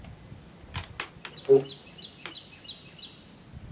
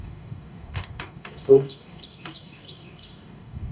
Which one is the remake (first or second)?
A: second